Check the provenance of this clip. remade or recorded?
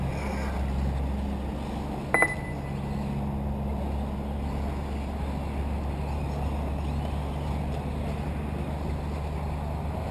recorded